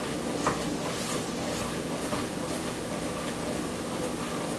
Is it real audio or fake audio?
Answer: real